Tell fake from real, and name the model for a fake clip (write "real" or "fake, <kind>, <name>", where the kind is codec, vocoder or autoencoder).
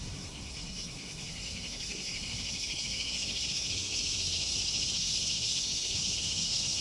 fake, codec, SNAC